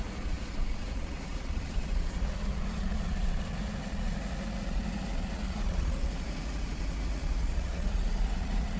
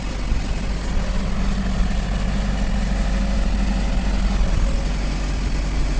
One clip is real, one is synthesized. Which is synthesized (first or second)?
first